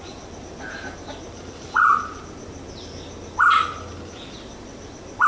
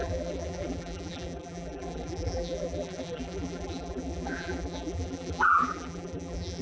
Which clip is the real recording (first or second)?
first